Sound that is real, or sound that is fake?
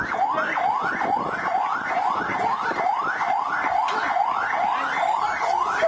real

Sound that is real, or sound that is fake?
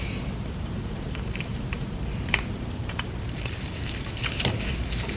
fake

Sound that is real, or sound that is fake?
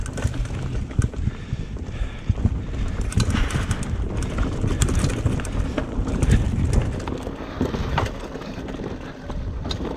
real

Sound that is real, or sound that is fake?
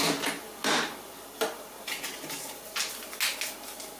real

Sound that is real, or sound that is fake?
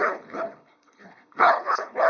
fake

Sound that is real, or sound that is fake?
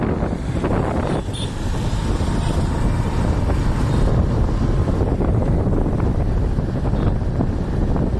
real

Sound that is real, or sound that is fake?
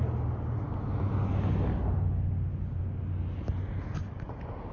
real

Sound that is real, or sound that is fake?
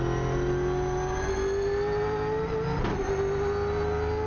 real